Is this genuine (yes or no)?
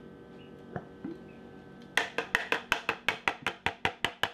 yes